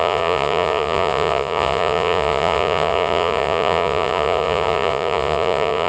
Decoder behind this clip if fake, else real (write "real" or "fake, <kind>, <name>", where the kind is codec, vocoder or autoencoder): fake, vocoder, Vocos